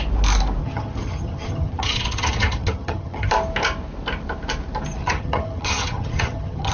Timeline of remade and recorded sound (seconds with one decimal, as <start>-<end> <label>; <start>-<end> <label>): 0.0-0.6 recorded; 0.6-3.3 remade; 3.3-5.0 recorded; 5.0-6.7 remade